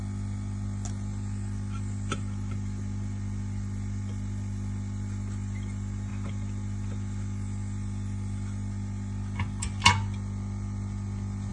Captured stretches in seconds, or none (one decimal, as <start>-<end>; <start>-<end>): 0.0-11.5

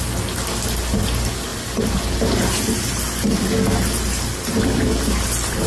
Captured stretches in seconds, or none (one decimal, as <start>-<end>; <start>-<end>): 0.0-5.7